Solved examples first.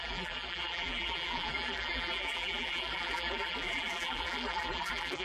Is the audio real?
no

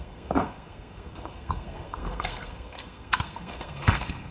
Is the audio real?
no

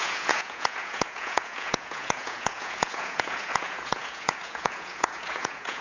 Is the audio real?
no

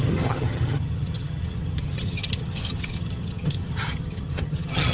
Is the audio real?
no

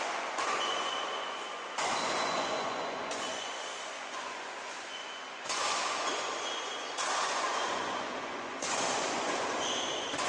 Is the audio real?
no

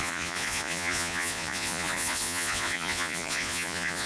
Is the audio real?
no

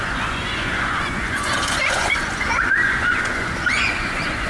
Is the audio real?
no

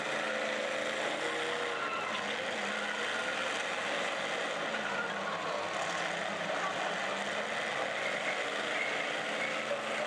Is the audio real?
yes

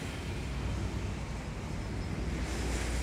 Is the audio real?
yes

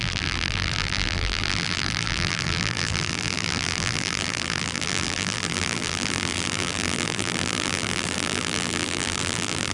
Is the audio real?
no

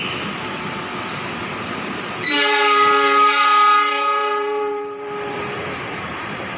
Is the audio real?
no